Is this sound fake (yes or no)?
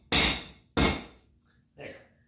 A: no